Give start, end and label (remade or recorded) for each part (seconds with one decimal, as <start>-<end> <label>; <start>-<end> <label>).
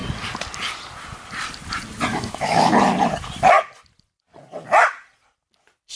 0.0-2.1 recorded; 2.1-2.7 remade; 2.7-6.0 recorded